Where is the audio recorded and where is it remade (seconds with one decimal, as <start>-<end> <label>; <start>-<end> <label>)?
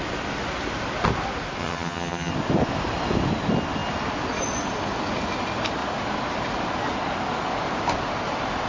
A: 0.0-1.6 recorded; 1.6-2.3 remade; 2.3-8.7 recorded